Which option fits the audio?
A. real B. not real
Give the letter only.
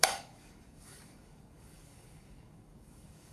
B